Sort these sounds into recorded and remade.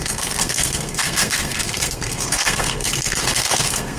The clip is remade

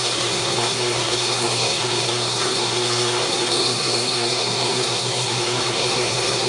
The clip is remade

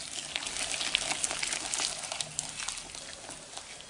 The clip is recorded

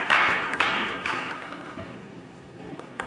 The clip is remade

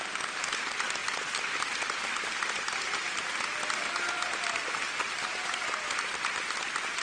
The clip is recorded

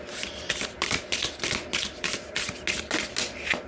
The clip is recorded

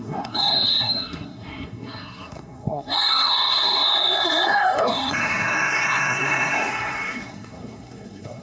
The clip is remade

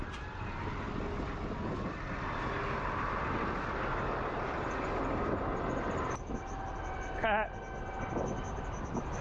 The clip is recorded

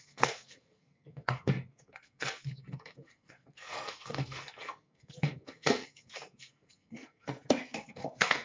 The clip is remade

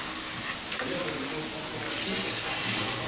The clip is recorded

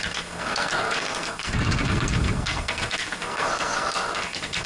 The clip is remade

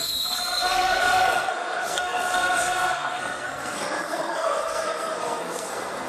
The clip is remade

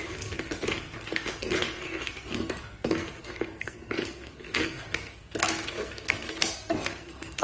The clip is remade